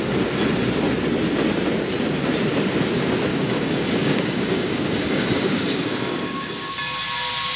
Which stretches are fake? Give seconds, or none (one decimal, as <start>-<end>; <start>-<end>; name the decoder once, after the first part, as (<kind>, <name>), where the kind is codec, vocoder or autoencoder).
3.3-6.7 (codec, DAC)